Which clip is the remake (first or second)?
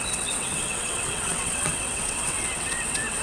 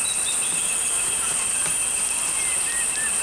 first